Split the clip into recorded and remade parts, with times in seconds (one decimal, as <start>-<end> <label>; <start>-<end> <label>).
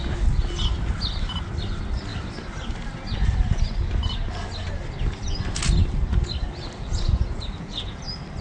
0.0-6.9 recorded; 6.9-8.0 remade; 8.0-8.4 recorded